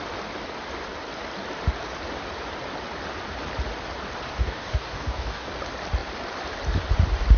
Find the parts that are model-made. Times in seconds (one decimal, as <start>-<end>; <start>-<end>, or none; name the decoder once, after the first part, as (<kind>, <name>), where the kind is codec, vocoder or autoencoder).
4.3-5.5 (codec, DAC)

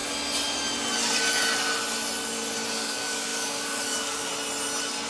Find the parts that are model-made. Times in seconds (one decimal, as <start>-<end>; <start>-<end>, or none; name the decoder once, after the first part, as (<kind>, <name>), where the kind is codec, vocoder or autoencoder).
2.7-4.3 (codec, DAC)